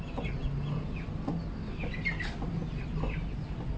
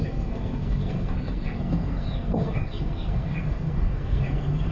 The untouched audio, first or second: first